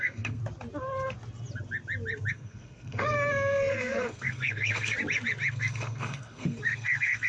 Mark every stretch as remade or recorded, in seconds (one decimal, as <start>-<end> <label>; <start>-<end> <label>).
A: 0.0-0.4 remade; 0.4-2.3 recorded; 2.3-4.9 remade; 4.9-5.5 recorded; 5.5-7.3 remade